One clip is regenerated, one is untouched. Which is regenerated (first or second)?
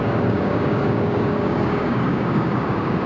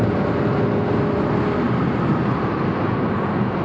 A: first